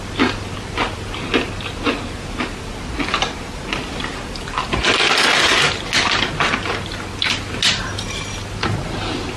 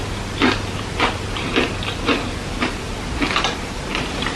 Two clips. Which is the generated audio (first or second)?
second